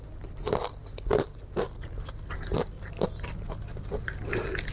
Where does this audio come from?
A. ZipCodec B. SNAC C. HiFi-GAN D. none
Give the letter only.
D